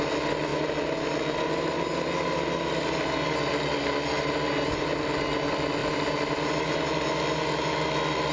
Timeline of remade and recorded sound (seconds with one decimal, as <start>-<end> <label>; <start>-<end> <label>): 0.0-8.3 recorded